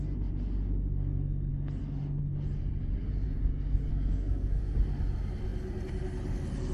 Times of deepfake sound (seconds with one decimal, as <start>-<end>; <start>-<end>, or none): 3.9-4.6